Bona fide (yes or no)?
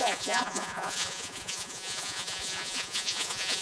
no